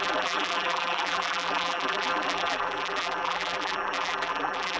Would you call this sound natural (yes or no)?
no